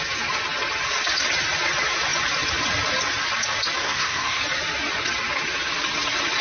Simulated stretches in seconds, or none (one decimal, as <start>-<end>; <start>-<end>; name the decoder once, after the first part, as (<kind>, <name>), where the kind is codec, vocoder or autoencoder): 3.8-4.4 (codec, SNAC)